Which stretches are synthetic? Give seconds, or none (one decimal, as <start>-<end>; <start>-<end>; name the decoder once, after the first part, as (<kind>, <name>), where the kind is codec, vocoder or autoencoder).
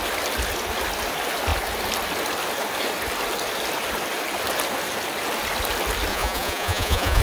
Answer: 6.1-7.2 (vocoder, Vocos)